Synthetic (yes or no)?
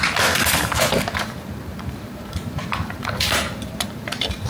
yes